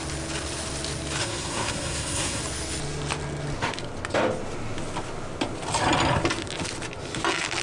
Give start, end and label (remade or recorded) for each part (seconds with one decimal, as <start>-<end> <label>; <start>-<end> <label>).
0.0-1.2 recorded; 1.2-2.4 remade; 2.4-7.6 recorded